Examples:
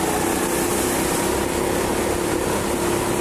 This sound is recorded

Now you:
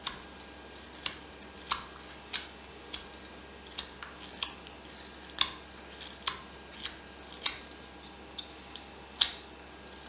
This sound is recorded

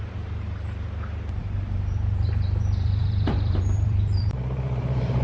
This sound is remade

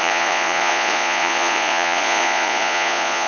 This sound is remade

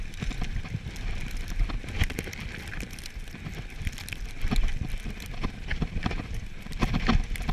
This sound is recorded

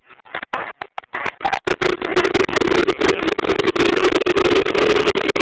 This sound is recorded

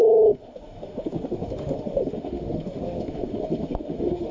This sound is remade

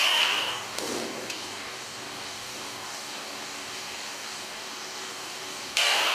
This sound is remade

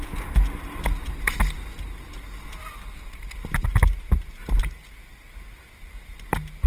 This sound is recorded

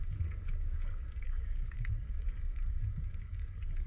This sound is remade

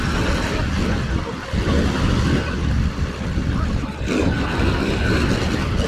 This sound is recorded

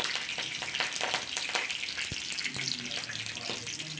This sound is recorded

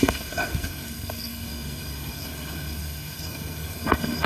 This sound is remade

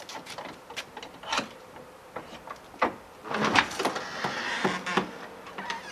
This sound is recorded